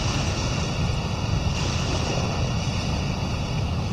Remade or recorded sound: recorded